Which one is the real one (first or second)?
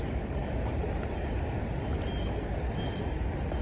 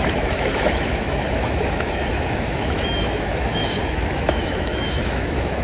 first